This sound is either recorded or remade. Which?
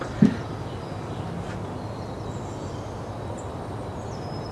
recorded